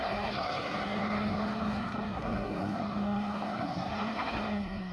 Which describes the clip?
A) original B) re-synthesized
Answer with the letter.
B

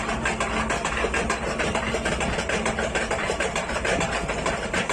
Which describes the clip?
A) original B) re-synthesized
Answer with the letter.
A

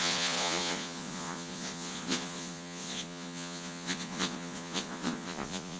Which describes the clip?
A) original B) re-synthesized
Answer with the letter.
B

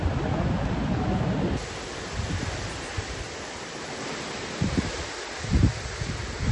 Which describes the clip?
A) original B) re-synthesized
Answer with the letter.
A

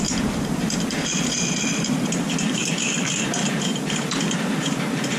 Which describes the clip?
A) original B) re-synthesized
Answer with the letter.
B